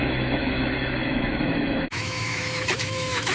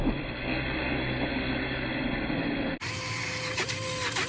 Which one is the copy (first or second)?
first